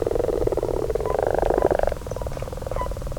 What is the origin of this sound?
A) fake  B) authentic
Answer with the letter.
A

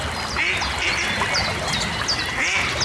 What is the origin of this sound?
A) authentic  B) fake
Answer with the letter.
A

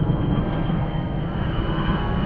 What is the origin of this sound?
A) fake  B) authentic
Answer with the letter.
A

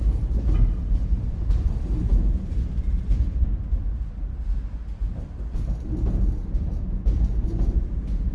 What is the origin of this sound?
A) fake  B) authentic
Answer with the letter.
A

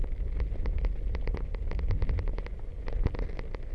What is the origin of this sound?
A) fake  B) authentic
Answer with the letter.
B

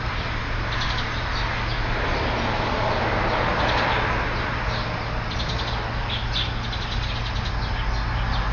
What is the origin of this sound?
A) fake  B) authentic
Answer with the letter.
B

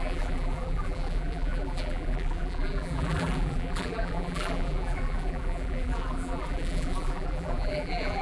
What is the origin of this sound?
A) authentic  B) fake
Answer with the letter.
B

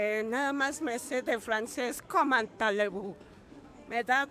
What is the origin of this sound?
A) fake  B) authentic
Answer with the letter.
A